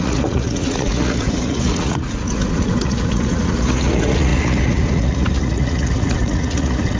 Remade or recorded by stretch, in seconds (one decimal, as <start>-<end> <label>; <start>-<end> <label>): 0.0-7.0 remade